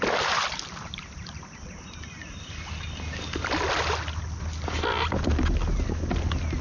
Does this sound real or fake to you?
real